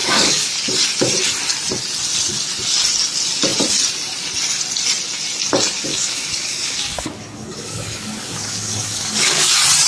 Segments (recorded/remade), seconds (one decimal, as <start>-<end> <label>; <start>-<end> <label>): 0.0-0.5 remade; 0.5-5.9 recorded; 5.9-9.5 remade; 9.5-9.9 recorded